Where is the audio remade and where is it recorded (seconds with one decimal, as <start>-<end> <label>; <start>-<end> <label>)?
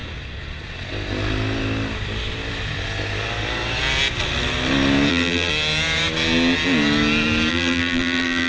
0.0-5.1 recorded; 5.1-5.5 remade; 5.5-7.5 recorded; 7.5-8.5 remade